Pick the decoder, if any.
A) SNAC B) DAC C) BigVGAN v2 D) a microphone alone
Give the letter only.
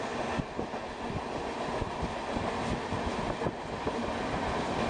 D